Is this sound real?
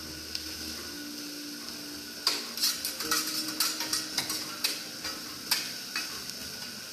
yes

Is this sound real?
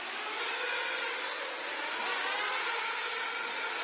yes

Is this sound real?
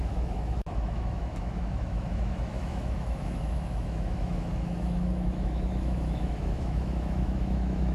no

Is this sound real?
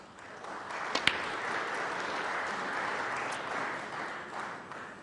yes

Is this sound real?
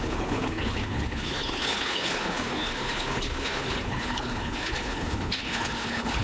no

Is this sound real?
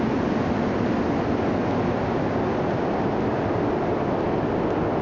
yes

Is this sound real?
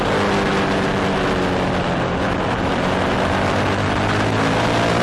yes